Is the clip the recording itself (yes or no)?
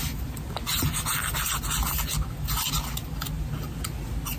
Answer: yes